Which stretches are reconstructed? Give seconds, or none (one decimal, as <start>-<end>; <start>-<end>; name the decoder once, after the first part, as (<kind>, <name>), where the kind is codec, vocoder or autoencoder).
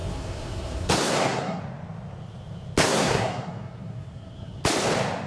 0.0-1.6 (codec, SNAC); 2.8-4.6